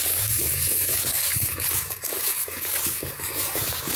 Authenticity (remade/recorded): remade